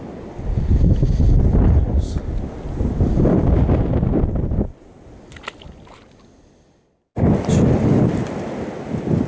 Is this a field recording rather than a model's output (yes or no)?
yes